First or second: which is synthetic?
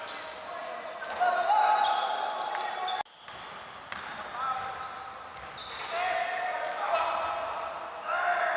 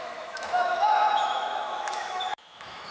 second